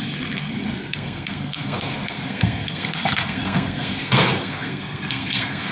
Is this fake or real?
fake